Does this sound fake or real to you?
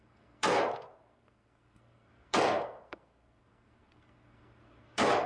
fake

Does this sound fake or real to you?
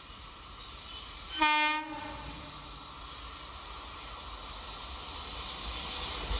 real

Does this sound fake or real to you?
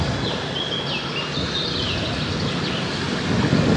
real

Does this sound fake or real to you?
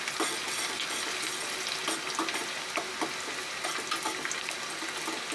real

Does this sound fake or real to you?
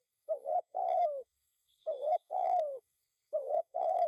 fake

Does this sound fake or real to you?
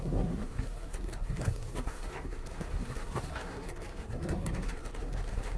fake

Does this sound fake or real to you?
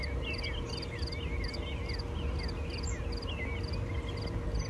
real